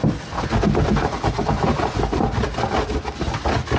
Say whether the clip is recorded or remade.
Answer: recorded